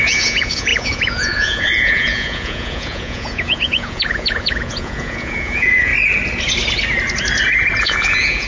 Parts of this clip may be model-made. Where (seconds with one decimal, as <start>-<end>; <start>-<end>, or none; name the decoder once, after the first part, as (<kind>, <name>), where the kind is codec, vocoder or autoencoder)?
0.0-5.9 (vocoder, Vocos); 7.8-8.5